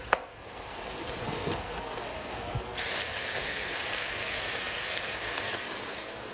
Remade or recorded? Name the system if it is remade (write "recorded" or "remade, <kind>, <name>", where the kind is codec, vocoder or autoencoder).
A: remade, codec, SNAC